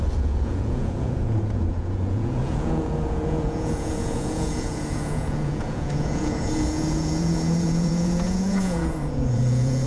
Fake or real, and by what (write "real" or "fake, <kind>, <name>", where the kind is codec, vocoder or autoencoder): fake, vocoder, Vocos